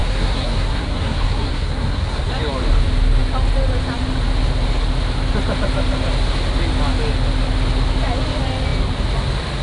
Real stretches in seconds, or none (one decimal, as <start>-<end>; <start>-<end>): 2.3-9.6